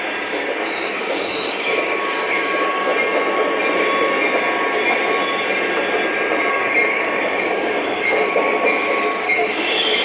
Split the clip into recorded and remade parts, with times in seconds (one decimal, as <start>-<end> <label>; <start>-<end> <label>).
0.0-2.9 remade; 2.9-6.5 recorded; 6.5-10.0 remade